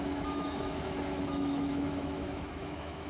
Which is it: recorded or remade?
remade